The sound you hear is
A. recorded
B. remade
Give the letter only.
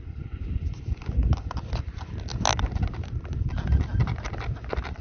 A